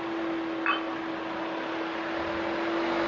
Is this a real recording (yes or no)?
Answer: yes